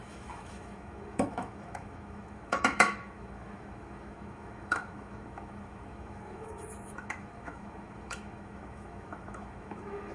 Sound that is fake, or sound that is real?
fake